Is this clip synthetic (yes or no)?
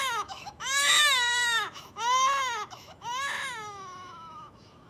yes